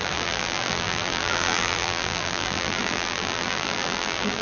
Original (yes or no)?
no